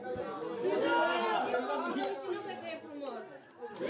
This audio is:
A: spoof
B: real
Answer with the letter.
B